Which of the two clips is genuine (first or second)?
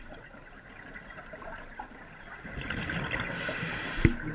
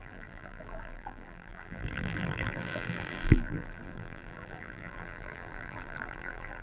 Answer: first